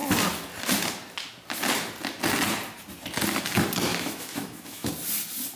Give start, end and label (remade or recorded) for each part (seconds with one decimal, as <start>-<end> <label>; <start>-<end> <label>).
0.0-3.9 recorded; 3.9-4.9 remade; 4.9-5.6 recorded